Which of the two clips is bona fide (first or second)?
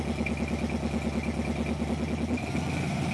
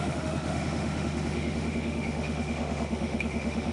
first